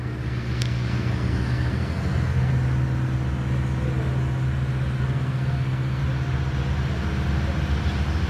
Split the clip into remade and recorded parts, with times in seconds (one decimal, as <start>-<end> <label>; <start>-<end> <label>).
0.0-2.5 remade; 2.5-5.0 recorded; 5.0-6.0 remade; 6.0-8.3 recorded